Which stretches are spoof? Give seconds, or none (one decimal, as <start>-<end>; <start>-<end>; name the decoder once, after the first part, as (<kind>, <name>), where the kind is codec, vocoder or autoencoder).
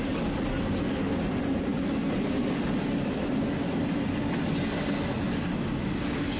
none